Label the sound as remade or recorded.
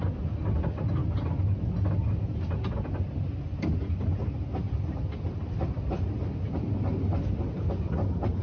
recorded